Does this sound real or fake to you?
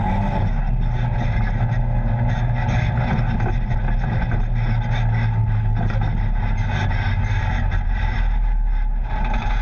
real